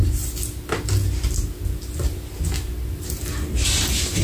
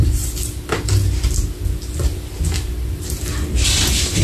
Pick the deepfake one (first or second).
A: second